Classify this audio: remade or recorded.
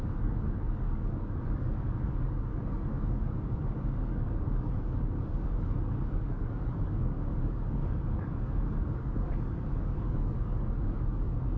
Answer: remade